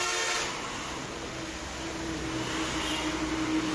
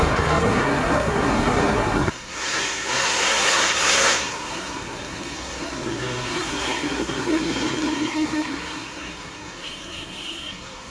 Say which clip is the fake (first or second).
second